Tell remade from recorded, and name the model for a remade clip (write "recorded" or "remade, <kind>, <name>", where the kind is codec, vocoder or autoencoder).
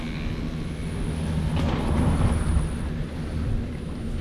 recorded